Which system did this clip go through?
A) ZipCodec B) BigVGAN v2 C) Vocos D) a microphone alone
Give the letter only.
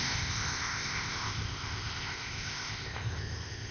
A